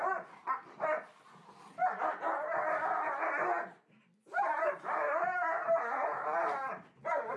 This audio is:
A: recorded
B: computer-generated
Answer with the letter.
A